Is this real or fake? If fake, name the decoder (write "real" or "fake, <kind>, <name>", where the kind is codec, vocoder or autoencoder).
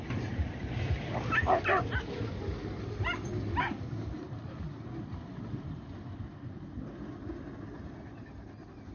real